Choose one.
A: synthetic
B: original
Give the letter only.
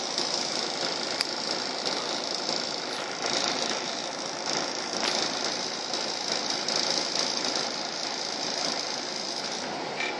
B